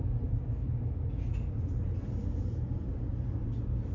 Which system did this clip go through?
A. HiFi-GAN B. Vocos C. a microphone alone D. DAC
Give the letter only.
C